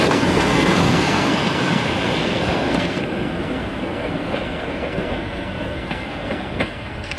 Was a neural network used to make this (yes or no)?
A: yes